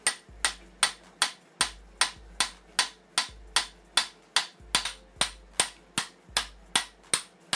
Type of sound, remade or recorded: recorded